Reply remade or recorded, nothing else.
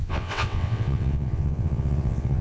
remade